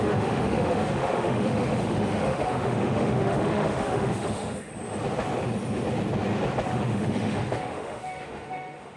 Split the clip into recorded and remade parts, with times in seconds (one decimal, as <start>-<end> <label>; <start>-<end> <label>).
0.0-4.7 remade; 4.7-6.7 recorded; 6.7-9.0 remade